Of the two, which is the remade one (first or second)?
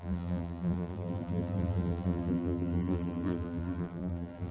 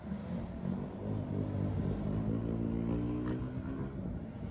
first